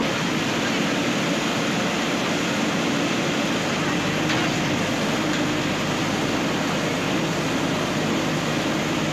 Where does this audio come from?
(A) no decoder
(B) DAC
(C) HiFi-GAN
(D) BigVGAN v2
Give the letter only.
A